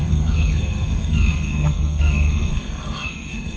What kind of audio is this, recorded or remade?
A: remade